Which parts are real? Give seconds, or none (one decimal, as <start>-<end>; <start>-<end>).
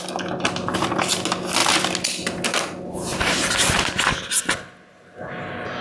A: 0.0-5.8